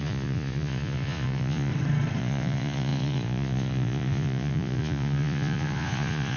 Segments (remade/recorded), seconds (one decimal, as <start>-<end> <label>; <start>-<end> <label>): 0.0-1.7 remade; 1.7-2.2 recorded; 2.2-6.4 remade